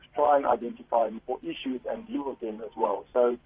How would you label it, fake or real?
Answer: fake